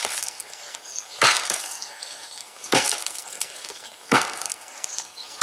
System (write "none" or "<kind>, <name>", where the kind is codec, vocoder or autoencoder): codec, SNAC